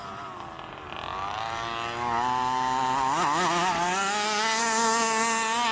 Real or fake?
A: real